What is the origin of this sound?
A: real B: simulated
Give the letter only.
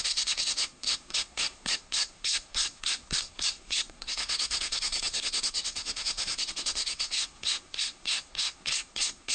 B